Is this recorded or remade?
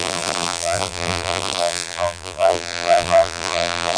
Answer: remade